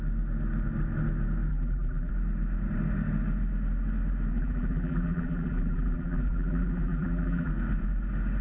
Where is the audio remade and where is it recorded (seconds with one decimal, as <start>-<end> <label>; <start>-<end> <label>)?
0.0-1.5 recorded; 1.5-2.1 remade; 2.1-4.3 recorded; 4.3-7.5 remade; 7.5-8.4 recorded